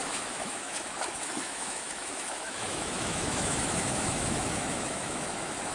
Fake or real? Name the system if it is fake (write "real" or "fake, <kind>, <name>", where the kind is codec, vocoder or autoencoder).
fake, autoencoder, DAC-VAE